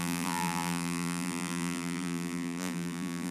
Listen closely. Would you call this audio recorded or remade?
remade